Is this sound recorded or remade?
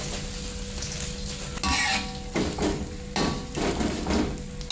recorded